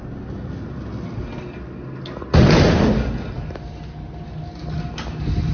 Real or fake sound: real